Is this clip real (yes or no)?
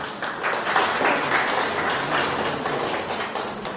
yes